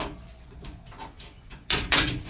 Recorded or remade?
remade